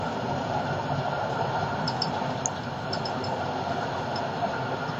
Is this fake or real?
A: real